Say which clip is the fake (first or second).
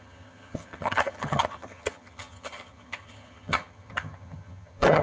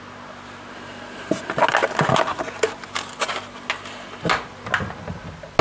first